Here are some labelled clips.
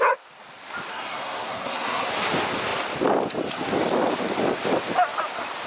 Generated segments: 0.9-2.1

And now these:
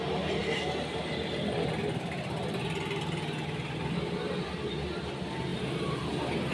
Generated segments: none

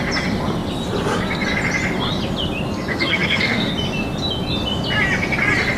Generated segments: 2.9-3.7

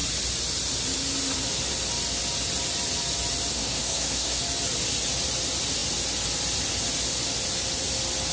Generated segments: 3.5-4.4